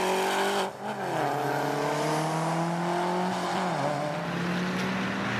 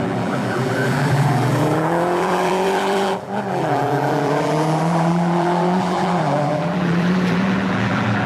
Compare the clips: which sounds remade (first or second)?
second